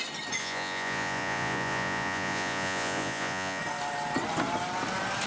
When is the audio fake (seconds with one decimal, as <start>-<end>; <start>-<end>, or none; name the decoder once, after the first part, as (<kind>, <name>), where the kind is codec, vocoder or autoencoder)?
0.4-3.6 (vocoder, Vocos)